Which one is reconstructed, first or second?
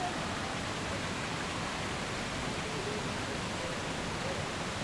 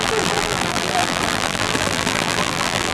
second